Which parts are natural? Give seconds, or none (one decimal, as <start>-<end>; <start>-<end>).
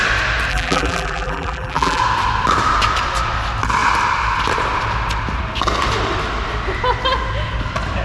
0.0-0.5; 2.0-8.0